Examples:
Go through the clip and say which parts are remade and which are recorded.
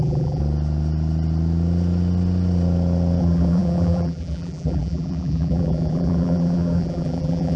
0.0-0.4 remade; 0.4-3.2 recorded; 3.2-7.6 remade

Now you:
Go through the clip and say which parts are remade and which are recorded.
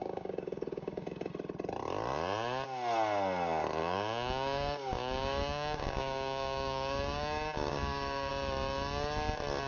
0.0-1.3 remade; 1.3-3.8 recorded; 3.8-8.3 remade; 8.3-9.7 recorded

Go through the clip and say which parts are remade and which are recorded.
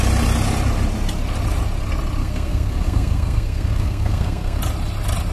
0.0-2.2 recorded; 2.2-4.6 remade; 4.6-5.3 recorded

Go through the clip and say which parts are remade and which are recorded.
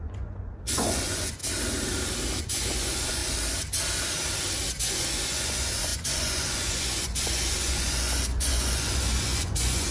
0.0-1.4 remade; 1.4-2.4 recorded; 2.4-3.2 remade; 3.2-4.8 recorded; 4.8-9.9 remade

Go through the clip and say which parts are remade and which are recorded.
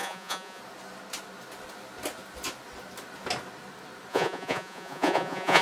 0.0-0.6 remade; 0.6-4.1 recorded; 4.1-5.6 remade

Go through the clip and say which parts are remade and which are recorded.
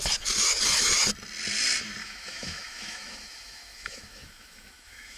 0.0-2.0 recorded; 2.0-5.2 remade